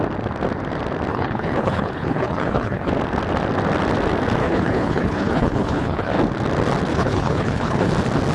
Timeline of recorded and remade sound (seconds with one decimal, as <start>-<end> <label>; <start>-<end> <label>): 0.0-1.1 recorded; 1.1-2.9 remade; 2.9-4.4 recorded; 4.4-6.1 remade; 6.1-6.9 recorded; 6.9-7.9 remade; 7.9-8.3 recorded